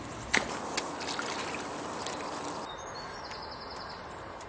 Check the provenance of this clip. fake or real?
real